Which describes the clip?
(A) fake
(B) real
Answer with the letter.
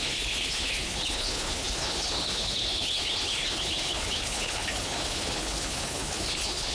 A